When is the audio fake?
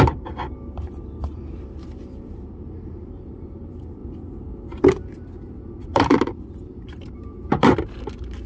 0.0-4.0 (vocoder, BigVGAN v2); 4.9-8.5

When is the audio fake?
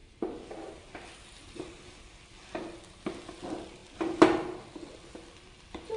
none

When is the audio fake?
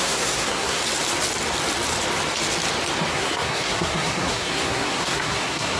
0.0-0.8 (codec, SNAC); 3.1-5.8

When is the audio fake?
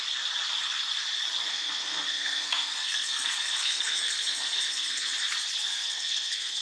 1.5-5.1 (codec, SNAC); 5.7-6.6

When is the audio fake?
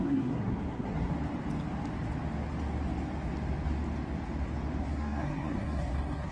0.0-1.1 (codec, SNAC); 4.8-6.3